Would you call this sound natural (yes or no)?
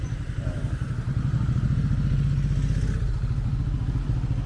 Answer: yes